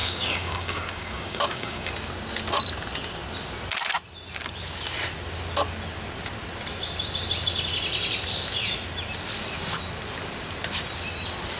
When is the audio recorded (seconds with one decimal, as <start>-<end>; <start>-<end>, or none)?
1.9-11.6